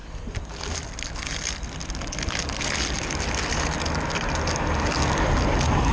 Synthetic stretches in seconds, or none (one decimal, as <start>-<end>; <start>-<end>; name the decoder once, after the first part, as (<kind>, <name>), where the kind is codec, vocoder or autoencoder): none